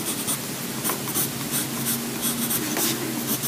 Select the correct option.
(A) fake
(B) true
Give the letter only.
B